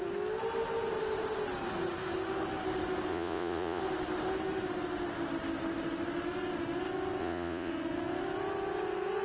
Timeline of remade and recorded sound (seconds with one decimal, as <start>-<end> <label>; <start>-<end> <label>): 0.0-3.1 recorded; 3.1-3.8 remade; 3.8-7.2 recorded; 7.2-7.7 remade; 7.7-9.2 recorded